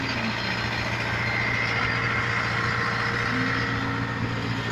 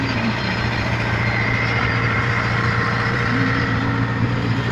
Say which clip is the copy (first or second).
second